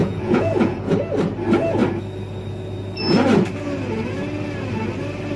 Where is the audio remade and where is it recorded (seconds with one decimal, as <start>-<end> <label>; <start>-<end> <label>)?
0.0-0.9 remade; 0.9-5.4 recorded